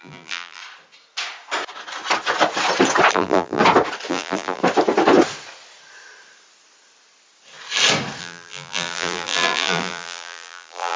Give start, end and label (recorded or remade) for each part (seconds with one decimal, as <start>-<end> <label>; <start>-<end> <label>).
0.0-0.6 remade; 0.6-3.1 recorded; 3.1-3.6 remade; 3.6-4.1 recorded; 4.1-4.6 remade; 4.6-8.2 recorded; 8.2-11.0 remade